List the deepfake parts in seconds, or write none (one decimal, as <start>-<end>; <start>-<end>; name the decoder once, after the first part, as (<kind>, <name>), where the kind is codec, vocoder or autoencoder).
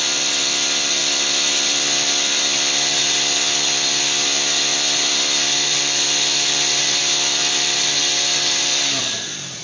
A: 0.0-9.6 (vocoder, BigVGAN v2)